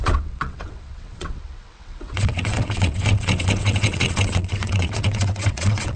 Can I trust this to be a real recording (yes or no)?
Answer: no